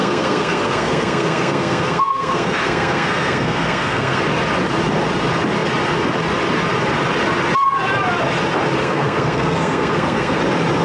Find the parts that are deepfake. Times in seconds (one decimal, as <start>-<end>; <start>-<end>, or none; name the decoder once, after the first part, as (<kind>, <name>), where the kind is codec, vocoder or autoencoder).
0.0-4.2 (codec, SNAC); 8.8-10.4